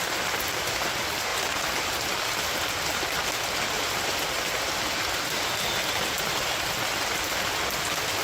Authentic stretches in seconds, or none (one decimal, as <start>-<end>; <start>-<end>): 0.0-8.2